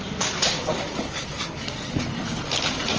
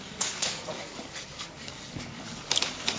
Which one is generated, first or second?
second